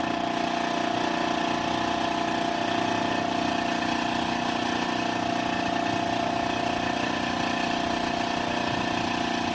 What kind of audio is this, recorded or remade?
recorded